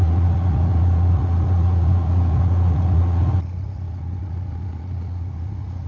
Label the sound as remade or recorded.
remade